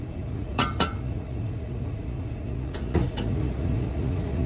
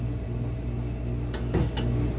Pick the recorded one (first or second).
second